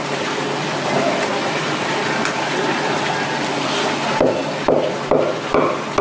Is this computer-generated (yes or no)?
no